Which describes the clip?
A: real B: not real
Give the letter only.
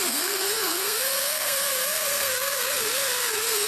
B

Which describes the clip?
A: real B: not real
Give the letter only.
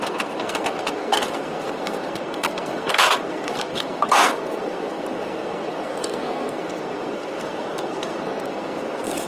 B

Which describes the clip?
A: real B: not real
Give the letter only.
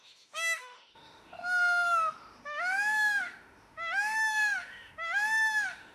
B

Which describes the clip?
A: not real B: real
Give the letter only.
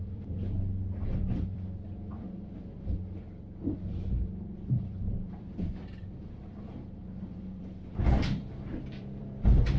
A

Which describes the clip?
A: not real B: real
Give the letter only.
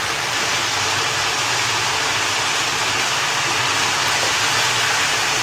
B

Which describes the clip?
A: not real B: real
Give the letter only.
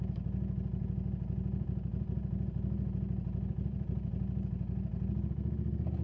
B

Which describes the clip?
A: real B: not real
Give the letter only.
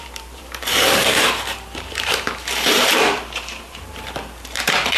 B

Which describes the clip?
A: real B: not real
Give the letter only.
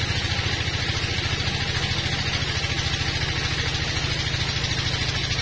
A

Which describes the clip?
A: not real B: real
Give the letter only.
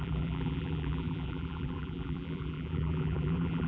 A